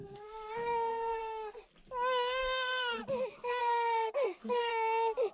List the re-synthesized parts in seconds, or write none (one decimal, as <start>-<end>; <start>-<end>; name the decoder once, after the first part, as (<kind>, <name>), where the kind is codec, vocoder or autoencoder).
0.0-1.6 (codec, SNAC); 2.4-3.0; 3.6-4.7